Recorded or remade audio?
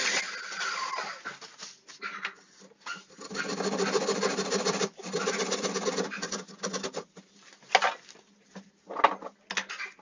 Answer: recorded